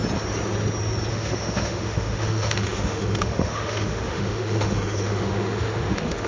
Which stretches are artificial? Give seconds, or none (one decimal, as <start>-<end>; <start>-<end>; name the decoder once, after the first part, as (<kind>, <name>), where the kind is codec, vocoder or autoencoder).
1.1-6.3 (autoencoder, DAC-VAE)